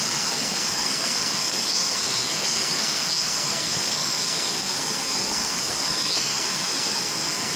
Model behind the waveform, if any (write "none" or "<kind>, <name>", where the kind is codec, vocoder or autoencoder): codec, SNAC